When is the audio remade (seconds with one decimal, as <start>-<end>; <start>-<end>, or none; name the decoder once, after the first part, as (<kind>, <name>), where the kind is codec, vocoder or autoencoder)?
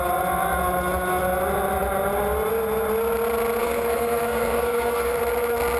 3.6-5.2 (codec, SNAC)